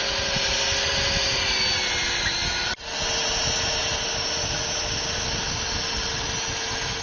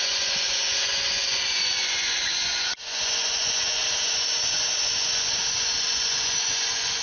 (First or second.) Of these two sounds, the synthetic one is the second